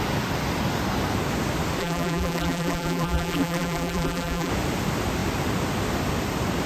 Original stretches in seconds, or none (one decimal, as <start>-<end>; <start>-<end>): 0.0-1.8; 4.5-6.7

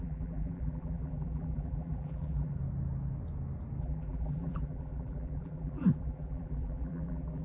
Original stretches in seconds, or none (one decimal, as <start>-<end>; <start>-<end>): 2.6-3.8

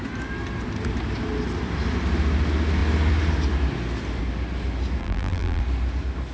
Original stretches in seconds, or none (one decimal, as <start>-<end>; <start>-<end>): 0.0-5.0; 5.6-6.3

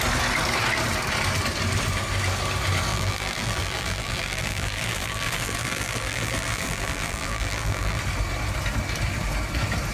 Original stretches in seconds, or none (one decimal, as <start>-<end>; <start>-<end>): 0.0-2.9; 8.0-9.9